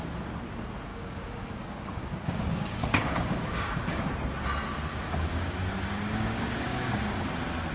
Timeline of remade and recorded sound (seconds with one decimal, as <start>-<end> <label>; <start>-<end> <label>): 0.0-0.9 recorded; 0.9-4.0 remade; 4.0-4.9 recorded; 4.9-7.3 remade; 7.3-7.7 recorded